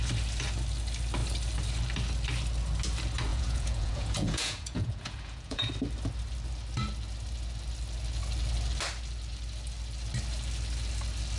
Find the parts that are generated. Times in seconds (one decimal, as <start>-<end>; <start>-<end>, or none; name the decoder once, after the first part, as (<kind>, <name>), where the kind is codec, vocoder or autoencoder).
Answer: 3.3-5.7 (vocoder, Vocos)